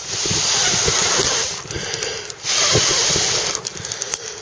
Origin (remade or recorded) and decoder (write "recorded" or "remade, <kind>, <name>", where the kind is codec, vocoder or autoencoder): recorded